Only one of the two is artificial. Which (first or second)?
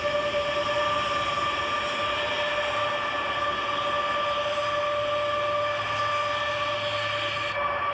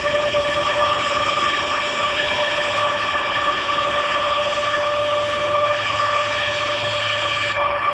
second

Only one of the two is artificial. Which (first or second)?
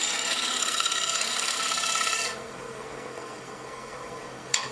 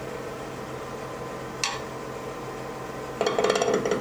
first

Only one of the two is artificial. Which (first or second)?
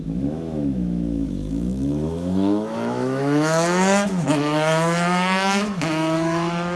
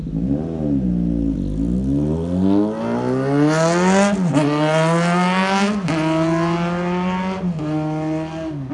first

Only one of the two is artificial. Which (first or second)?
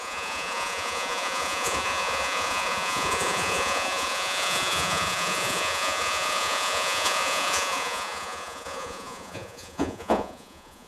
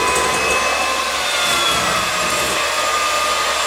first